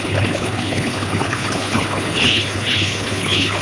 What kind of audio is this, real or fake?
fake